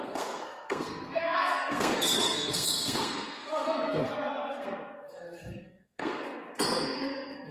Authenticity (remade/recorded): remade